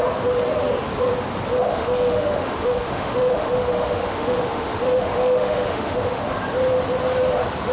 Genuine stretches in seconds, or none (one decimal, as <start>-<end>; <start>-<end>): 0.0-1.6; 6.2-7.7